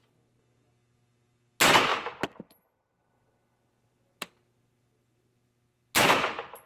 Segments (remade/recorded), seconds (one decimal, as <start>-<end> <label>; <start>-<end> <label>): 0.0-6.7 recorded